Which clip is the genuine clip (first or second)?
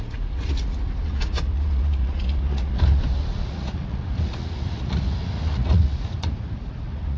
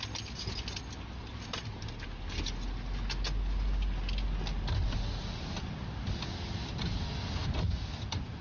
second